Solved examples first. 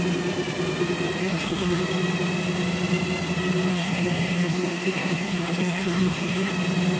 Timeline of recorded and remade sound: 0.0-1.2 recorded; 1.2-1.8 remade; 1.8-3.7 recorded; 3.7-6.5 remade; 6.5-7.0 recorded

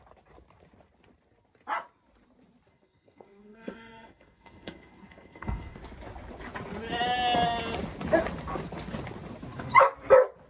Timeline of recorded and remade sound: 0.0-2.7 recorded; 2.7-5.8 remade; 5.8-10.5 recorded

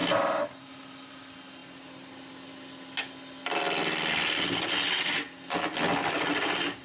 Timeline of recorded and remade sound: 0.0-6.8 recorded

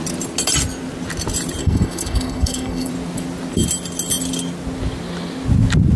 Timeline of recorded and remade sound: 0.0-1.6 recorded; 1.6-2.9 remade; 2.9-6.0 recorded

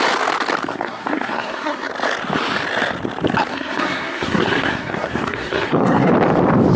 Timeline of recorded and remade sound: 0.0-0.7 recorded; 0.7-1.9 remade; 1.9-3.5 recorded; 3.5-6.1 remade; 6.1-6.8 recorded

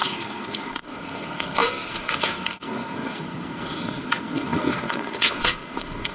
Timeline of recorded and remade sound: 0.0-6.1 remade

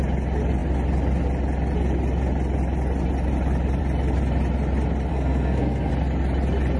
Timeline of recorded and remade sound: 0.0-5.1 recorded; 5.1-5.9 remade; 5.9-6.8 recorded